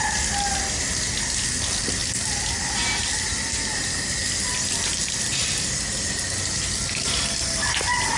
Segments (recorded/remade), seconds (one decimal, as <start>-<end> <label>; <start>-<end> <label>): 0.0-8.2 recorded